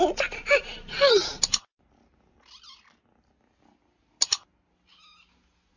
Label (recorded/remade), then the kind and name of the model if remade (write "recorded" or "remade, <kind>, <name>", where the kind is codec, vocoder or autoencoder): recorded